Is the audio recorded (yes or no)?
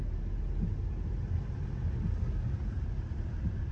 yes